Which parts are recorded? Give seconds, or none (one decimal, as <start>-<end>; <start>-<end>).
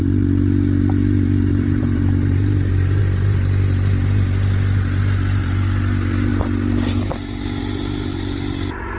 0.0-1.5; 3.0-9.0